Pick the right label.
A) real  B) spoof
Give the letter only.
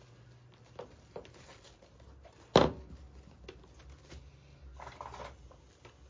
A